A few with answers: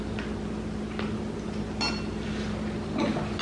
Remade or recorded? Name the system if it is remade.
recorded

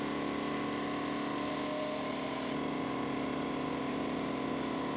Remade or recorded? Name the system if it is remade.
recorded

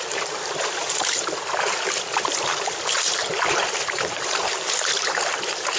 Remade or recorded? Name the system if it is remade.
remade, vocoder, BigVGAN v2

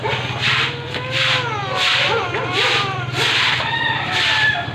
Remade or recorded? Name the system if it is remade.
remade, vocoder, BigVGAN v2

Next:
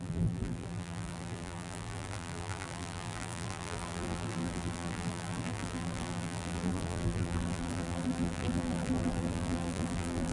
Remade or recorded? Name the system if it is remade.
remade, vocoder, BigVGAN v2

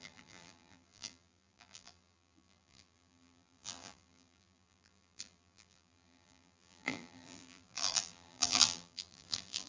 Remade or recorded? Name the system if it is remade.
remade, vocoder, BigVGAN v2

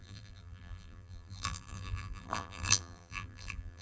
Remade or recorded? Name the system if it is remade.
remade, vocoder, BigVGAN v2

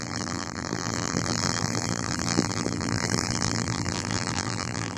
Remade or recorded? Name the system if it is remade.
remade, vocoder, BigVGAN v2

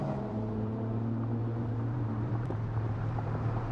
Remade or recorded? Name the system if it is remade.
remade, vocoder, BigVGAN v2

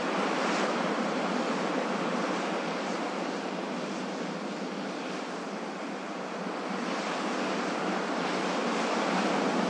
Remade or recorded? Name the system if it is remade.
remade, vocoder, BigVGAN v2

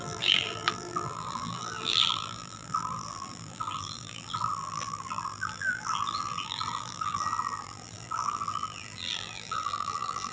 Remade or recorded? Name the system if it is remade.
remade, vocoder, BigVGAN v2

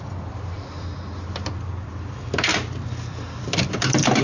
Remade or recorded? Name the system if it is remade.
remade, vocoder, BigVGAN v2